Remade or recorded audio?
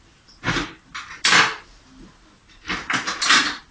recorded